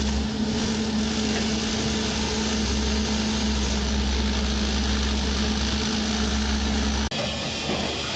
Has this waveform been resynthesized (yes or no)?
no